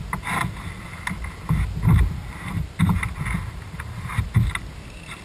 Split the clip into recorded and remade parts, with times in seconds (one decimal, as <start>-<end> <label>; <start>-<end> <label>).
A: 0.0-2.2 recorded; 2.2-4.1 remade; 4.1-5.2 recorded